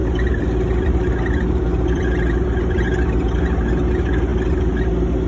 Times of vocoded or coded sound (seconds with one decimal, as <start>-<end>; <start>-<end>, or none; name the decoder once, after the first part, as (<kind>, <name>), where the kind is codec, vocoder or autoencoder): 0.0-1.1 (vocoder, BigVGAN v2); 1.7-2.8